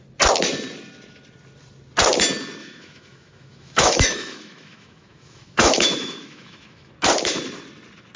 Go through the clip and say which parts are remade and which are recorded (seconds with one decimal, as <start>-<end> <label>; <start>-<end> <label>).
0.0-2.6 recorded; 2.6-6.9 remade; 6.9-8.2 recorded